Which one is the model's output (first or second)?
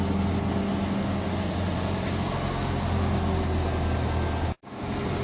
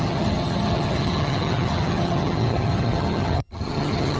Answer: second